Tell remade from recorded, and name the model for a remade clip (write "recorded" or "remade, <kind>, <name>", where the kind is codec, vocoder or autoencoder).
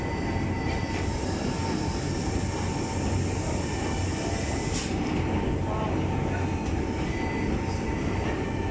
recorded